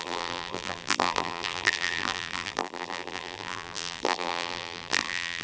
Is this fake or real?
fake